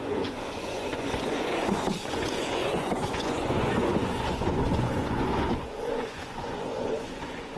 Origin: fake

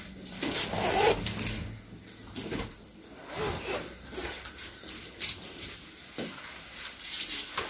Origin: real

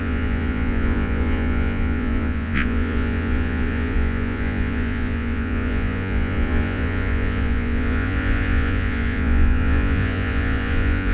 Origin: fake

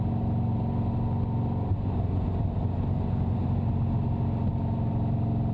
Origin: real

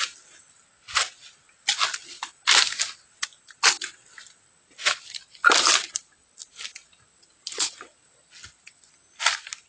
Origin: real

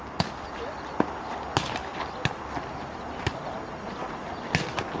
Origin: real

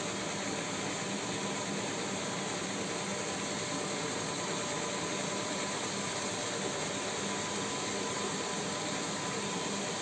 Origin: real